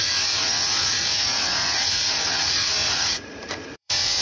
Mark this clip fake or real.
fake